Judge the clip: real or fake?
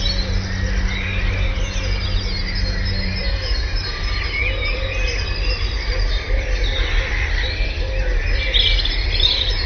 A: real